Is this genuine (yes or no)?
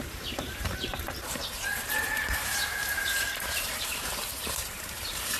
no